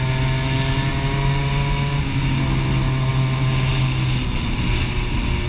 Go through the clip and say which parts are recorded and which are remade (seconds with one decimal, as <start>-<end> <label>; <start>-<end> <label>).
0.0-5.5 recorded